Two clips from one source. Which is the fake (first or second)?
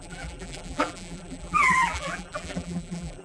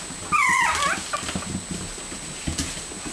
first